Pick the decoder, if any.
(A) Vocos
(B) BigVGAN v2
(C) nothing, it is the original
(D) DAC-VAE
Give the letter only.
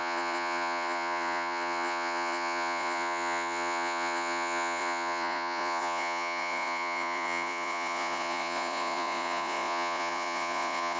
A